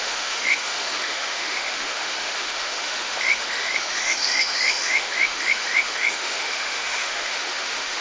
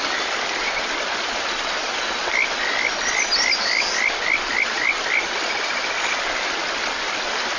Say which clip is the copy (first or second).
first